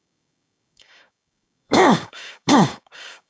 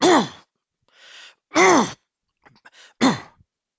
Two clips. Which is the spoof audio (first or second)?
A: first